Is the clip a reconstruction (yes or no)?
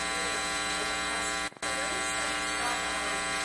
no